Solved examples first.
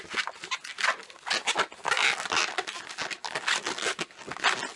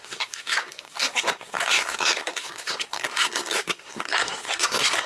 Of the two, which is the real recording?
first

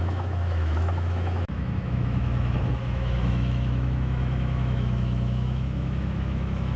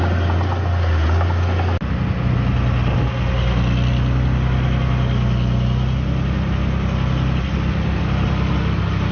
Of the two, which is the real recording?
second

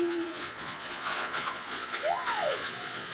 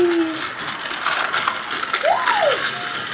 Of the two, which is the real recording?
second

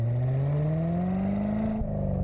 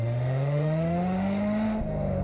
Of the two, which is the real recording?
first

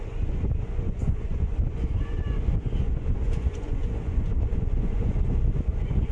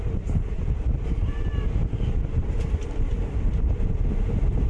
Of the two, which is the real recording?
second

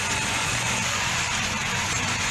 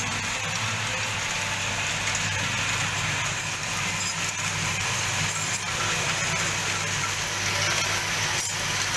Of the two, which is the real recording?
second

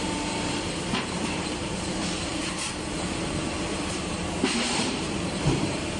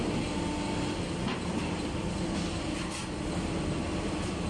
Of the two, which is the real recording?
second